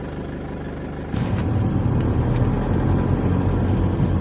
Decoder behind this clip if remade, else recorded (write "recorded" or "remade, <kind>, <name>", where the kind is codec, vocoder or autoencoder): recorded